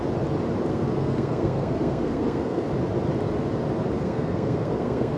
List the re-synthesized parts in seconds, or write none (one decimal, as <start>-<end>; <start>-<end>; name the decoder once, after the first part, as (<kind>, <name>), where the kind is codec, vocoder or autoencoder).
0.7-2.7 (codec, SNAC); 4.0-5.2

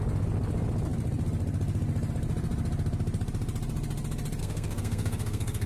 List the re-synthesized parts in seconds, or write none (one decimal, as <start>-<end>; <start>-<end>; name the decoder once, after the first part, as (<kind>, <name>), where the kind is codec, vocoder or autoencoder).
4.4-5.7 (codec, SNAC)

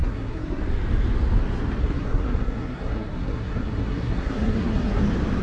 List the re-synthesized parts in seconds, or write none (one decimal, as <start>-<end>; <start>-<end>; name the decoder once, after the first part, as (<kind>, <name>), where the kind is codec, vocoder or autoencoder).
0.0-0.6 (codec, SNAC); 1.8-5.0

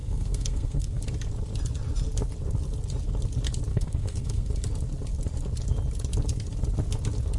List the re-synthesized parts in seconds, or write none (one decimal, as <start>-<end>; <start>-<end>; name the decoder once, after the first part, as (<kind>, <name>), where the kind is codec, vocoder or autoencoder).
0.0-1.0 (codec, SNAC); 3.7-4.5

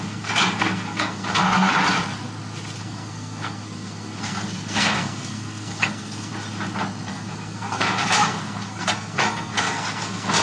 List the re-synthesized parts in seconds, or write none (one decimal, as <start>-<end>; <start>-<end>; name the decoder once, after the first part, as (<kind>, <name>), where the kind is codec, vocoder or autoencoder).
0.0-1.7 (codec, SNAC); 2.8-6.3; 7.1-10.4

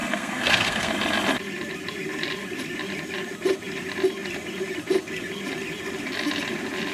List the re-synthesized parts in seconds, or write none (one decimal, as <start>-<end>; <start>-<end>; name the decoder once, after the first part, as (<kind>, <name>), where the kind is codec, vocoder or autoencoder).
0.0-0.9 (codec, SNAC)

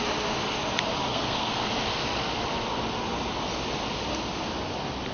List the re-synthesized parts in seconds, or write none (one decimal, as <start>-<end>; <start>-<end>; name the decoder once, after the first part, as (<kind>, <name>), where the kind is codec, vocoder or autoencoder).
1.1-1.7 (codec, SNAC)